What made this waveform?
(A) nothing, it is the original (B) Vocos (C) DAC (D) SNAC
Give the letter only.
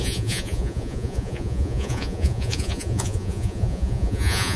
B